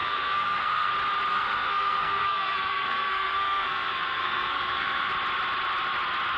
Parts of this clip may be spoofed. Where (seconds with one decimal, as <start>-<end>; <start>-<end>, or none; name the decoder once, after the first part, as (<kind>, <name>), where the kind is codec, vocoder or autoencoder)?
0.0-0.9 (codec, SNAC); 1.3-5.1